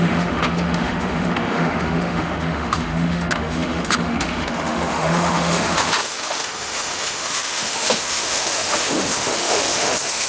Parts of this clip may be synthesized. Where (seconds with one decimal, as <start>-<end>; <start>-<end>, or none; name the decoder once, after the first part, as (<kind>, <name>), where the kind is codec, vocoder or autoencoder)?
0.0-10.3 (autoencoder, DAC-VAE)